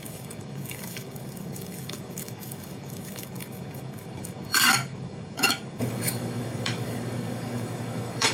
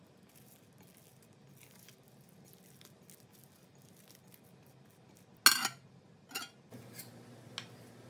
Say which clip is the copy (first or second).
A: first